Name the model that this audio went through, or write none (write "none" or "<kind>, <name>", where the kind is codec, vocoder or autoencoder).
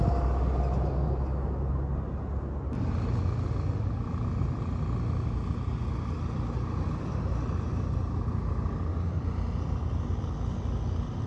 none